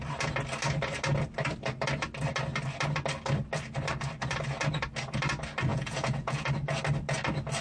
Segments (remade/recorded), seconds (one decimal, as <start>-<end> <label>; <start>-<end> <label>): 0.0-5.7 recorded; 5.7-6.5 remade; 6.5-7.6 recorded